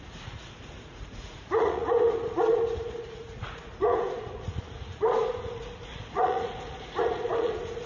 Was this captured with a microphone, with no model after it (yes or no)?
no